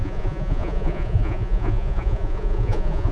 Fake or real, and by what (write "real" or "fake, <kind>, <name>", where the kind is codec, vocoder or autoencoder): fake, vocoder, Vocos